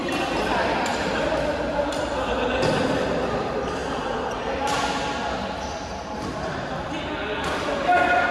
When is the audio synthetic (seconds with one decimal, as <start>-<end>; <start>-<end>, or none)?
none